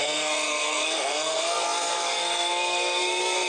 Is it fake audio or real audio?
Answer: fake